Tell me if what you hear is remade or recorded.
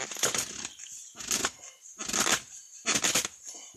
recorded